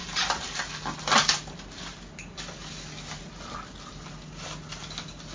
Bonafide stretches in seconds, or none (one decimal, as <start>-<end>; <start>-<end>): 0.0-5.3